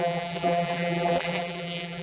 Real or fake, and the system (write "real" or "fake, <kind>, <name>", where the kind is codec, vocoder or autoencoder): fake, vocoder, BigVGAN v2